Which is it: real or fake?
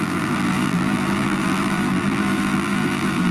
fake